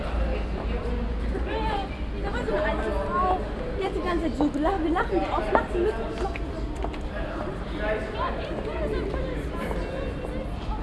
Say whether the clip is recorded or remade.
recorded